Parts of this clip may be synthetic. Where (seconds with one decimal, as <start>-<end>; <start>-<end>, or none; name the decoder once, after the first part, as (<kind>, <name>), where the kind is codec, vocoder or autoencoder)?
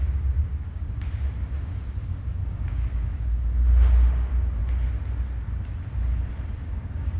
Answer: 0.4-0.9 (codec, DAC); 2.4-3.1; 6.6-7.2